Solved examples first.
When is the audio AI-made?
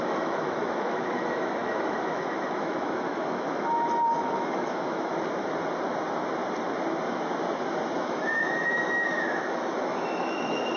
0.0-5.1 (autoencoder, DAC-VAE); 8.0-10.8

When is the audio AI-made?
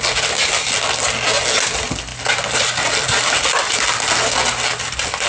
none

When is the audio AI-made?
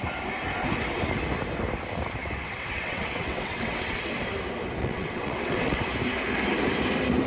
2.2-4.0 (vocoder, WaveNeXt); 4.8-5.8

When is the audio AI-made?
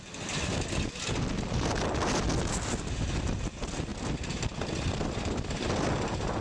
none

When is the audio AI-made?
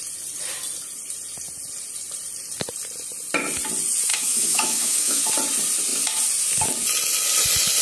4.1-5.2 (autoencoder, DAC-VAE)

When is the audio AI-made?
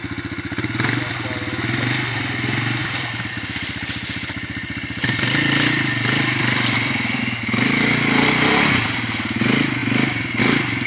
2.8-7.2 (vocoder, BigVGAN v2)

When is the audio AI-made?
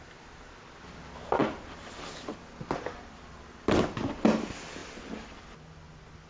none